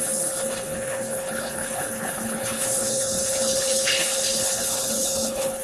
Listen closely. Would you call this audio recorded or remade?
remade